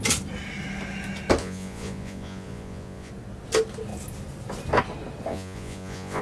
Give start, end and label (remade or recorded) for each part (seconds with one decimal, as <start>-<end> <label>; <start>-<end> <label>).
0.0-1.4 recorded; 1.4-3.1 remade; 3.1-5.3 recorded; 5.3-6.2 remade